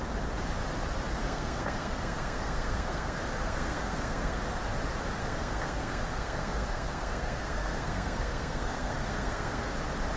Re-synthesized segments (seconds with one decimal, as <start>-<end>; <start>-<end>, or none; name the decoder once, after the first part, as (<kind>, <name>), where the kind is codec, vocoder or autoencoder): 1.2-4.4 (codec, SNAC); 5.2-9.7